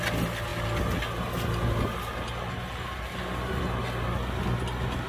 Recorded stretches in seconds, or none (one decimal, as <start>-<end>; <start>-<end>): 0.0-5.1